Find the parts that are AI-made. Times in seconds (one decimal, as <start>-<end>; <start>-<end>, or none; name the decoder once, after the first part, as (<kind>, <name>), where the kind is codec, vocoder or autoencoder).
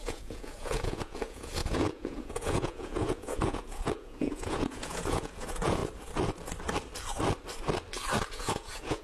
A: 0.0-5.8 (vocoder, Vocos); 8.3-9.0